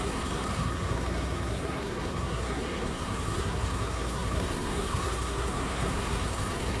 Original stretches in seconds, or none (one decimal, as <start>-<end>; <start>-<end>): none

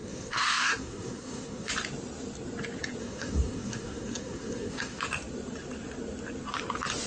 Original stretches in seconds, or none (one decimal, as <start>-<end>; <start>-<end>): 1.7-3.0; 5.0-7.1

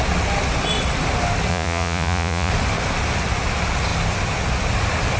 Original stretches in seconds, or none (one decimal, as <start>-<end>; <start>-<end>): 0.0-1.5; 2.5-5.2

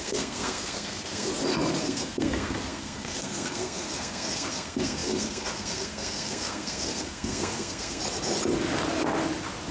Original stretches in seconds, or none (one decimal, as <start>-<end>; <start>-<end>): 1.3-1.8; 8.0-9.7